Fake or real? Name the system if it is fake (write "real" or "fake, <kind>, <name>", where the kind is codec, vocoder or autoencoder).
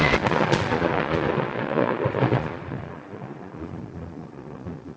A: fake, vocoder, Vocos